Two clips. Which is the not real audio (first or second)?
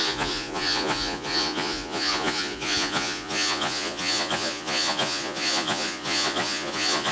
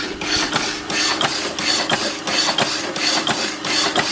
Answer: first